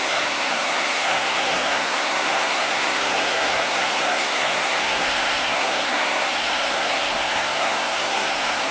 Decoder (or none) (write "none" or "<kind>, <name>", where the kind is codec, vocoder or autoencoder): codec, SNAC